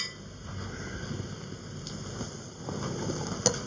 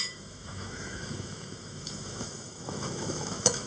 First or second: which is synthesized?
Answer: second